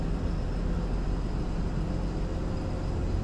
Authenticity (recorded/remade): recorded